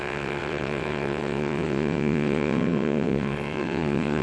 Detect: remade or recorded remade